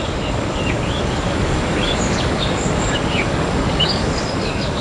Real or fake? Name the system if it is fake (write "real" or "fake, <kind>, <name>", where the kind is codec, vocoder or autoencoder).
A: fake, codec, DAC